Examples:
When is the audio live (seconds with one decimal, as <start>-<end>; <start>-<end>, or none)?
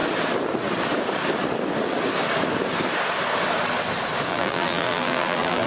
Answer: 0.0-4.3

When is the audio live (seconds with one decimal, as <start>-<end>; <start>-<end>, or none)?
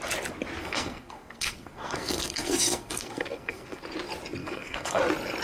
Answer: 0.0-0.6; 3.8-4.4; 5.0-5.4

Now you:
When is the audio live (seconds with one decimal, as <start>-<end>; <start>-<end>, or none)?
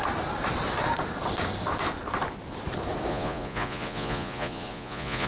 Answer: 0.0-3.1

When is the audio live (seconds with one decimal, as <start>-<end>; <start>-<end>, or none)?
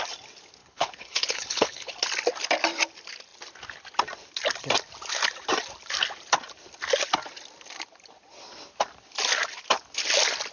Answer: 0.0-0.6; 1.9-10.5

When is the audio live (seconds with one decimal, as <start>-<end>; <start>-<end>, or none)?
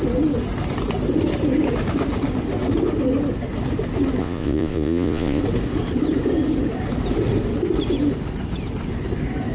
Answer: 0.0-4.2; 5.4-9.5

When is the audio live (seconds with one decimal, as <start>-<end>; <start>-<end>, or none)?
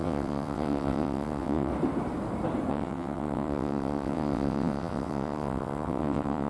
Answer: 1.7-2.7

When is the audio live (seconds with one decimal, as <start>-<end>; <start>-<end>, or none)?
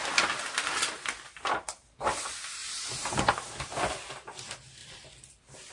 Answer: 0.0-2.6; 3.2-5.7